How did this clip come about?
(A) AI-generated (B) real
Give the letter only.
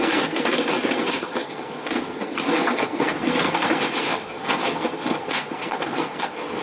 A